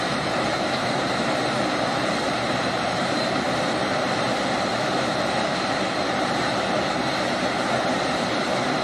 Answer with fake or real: fake